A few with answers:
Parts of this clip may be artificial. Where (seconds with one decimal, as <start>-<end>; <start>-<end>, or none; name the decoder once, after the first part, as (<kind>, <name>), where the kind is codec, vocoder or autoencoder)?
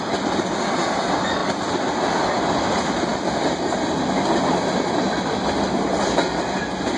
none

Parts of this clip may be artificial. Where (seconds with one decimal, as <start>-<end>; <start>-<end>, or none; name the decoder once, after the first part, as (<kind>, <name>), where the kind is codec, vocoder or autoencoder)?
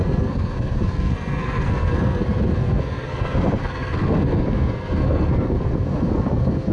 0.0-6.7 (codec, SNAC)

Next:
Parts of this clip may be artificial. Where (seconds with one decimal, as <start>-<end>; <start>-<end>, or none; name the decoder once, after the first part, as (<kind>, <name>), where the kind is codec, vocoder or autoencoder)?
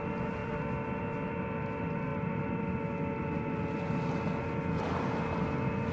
none